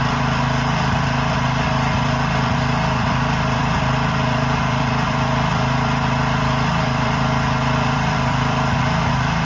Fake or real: fake